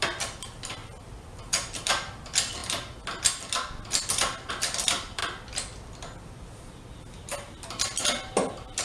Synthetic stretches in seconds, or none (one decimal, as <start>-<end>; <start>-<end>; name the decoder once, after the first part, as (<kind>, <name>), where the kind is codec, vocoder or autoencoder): 0.0-0.8 (vocoder, BigVGAN v2); 1.9-2.6; 4.5-5.2

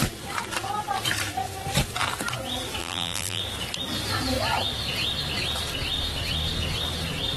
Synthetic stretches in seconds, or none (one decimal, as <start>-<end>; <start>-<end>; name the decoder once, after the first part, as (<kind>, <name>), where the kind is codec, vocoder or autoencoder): 2.8-3.4 (vocoder, BigVGAN v2)

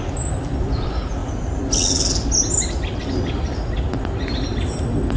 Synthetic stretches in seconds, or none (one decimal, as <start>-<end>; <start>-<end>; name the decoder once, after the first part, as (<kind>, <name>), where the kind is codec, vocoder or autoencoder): none

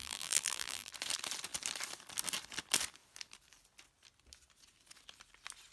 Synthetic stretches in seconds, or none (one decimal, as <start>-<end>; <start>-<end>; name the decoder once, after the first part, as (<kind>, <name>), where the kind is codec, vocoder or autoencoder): 0.0-0.9 (vocoder, BigVGAN v2)